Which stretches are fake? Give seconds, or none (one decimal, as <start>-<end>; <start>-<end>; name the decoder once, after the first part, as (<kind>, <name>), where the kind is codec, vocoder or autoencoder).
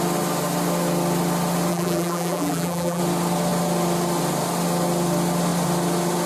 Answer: 1.7-3.0 (vocoder, BigVGAN v2)